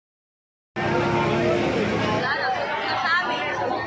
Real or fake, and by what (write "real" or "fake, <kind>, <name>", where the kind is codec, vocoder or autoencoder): real